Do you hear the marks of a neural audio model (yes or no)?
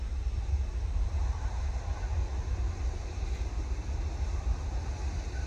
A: no